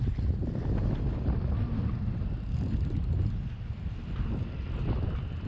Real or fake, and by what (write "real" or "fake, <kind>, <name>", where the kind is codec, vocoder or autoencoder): real